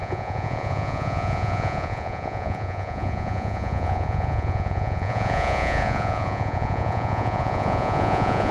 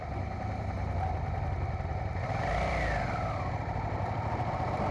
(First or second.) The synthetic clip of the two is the first